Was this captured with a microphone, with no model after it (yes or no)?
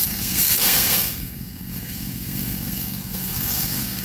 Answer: no